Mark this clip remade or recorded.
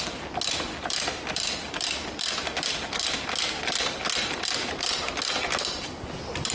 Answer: recorded